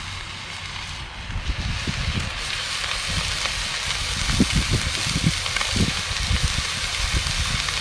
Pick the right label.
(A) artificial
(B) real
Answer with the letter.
B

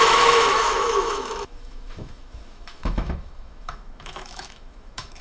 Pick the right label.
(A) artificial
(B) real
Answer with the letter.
A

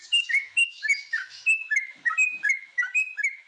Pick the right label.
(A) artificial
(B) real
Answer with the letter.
A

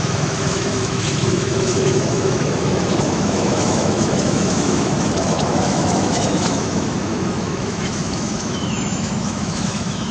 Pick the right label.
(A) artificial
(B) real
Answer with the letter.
A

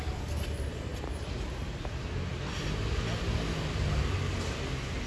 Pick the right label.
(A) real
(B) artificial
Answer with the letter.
A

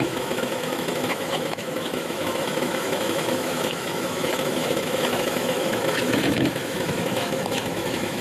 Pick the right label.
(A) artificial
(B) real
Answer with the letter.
A